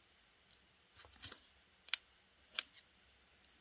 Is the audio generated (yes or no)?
no